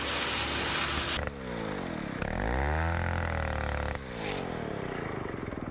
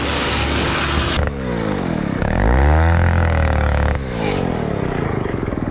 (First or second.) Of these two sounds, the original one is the first